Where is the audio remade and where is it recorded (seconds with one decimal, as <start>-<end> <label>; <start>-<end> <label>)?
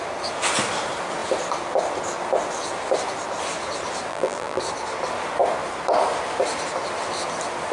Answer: 0.0-4.1 recorded; 4.1-4.6 remade; 4.6-7.7 recorded